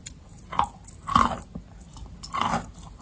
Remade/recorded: recorded